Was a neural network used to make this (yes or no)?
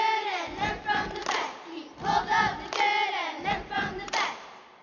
no